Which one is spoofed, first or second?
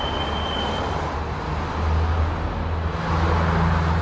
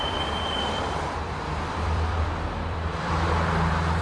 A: second